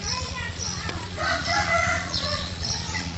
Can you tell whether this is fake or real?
fake